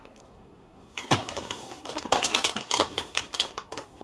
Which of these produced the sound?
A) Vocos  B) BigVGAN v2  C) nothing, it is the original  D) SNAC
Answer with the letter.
D